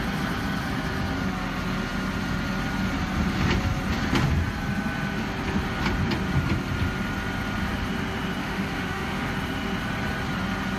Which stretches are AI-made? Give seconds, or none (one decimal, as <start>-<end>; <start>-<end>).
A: 8.4-9.3